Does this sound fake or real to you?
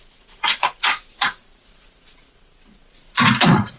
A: fake